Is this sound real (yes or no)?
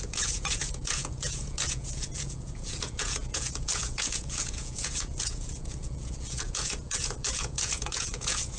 no